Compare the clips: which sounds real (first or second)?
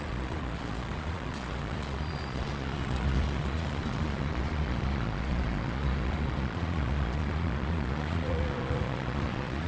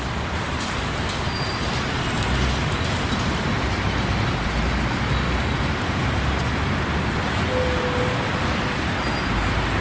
second